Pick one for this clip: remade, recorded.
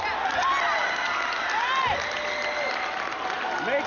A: recorded